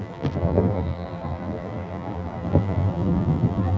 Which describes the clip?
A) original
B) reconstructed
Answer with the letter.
B